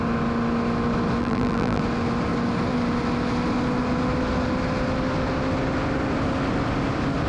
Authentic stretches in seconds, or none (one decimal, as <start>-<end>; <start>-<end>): 0.0-1.2; 1.8-7.3